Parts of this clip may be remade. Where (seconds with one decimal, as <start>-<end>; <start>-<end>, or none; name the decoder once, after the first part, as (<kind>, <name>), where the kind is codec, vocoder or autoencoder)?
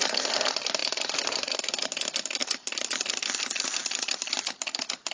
0.8-1.7 (vocoder, BigVGAN v2)